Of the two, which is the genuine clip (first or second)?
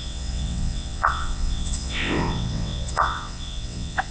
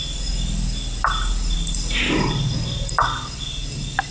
second